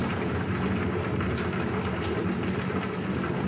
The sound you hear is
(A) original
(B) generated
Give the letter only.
A